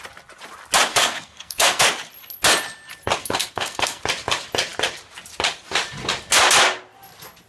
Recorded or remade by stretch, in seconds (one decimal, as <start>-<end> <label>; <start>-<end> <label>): 0.0-0.9 recorded; 0.9-1.8 remade; 1.8-3.2 recorded; 3.2-4.0 remade; 4.0-7.5 recorded